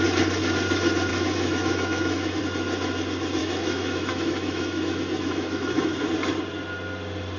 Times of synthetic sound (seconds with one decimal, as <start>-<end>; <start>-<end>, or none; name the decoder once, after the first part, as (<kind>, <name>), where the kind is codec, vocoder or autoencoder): 1.1-2.4 (autoencoder, DAC-VAE); 3.4-6.0